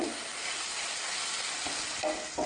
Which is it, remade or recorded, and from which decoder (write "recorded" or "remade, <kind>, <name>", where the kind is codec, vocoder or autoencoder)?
recorded